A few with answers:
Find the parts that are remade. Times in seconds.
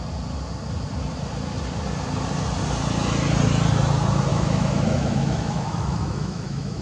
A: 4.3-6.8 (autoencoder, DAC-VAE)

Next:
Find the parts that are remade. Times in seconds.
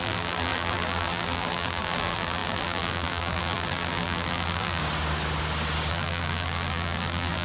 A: 0.0-4.8 (vocoder, BigVGAN v2); 5.9-7.4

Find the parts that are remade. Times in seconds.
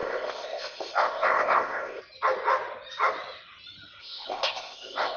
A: 0.0-2.0 (codec, ZipCodec); 4.0-5.2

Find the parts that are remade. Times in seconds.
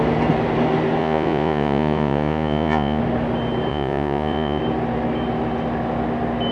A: 1.0-3.0 (vocoder, Vocos); 3.7-4.6